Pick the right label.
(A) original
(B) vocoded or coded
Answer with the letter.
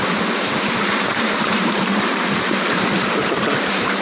B